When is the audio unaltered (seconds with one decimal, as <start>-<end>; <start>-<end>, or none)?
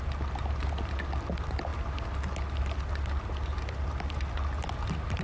0.0-5.2